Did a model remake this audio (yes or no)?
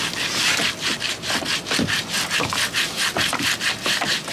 no